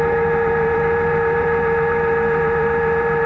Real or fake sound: fake